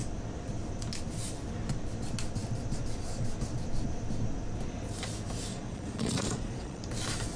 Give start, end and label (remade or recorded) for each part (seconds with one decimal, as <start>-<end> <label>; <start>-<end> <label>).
0.0-5.5 recorded; 5.5-6.8 remade; 6.8-7.4 recorded